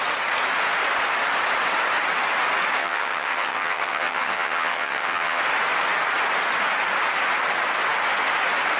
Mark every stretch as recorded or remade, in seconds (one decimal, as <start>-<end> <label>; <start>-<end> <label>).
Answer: 0.0-2.8 recorded; 2.8-5.4 remade; 5.4-8.8 recorded